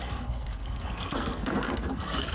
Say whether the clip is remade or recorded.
remade